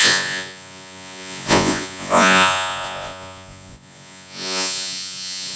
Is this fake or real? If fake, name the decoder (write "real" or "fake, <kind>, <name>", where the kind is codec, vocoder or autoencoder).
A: fake, vocoder, Vocos